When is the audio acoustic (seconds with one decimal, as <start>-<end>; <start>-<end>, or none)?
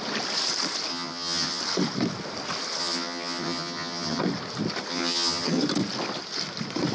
0.0-0.9; 1.6-2.8; 4.2-4.9; 5.6-6.9